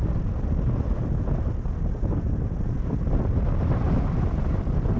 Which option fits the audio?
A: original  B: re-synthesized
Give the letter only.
A